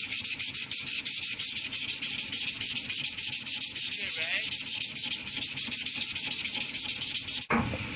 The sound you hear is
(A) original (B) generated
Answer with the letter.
A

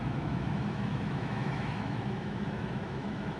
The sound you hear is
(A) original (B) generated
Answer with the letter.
B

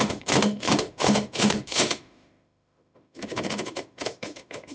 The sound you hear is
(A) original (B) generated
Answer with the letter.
B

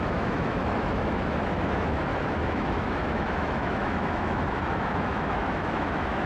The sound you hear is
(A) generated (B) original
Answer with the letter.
A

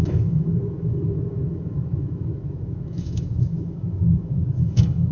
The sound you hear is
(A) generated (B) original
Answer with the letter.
A